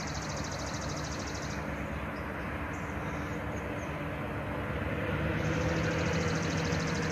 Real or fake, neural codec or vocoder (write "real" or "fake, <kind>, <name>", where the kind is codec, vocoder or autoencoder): real